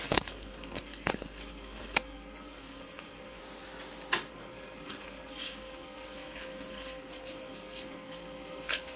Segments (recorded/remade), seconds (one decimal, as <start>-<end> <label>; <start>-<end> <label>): 0.0-3.4 remade; 3.4-4.3 recorded; 4.3-9.0 remade